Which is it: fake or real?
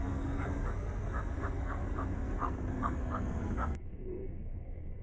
fake